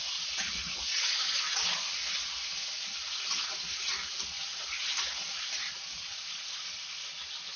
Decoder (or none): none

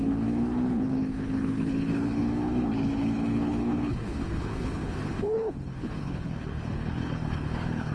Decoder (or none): codec, HILCodec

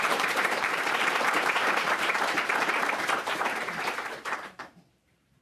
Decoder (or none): vocoder, BigVGAN v2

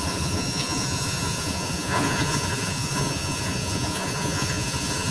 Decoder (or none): vocoder, Vocos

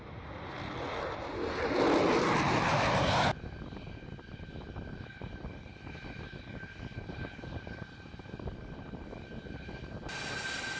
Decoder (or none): none